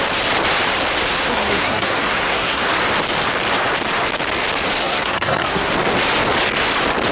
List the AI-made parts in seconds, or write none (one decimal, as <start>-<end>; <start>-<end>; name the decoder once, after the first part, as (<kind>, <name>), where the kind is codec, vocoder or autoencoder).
1.3-2.6 (codec, SNAC); 4.8-5.7